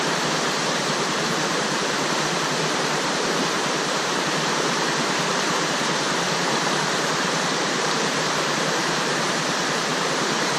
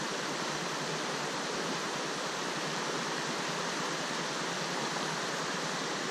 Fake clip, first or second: first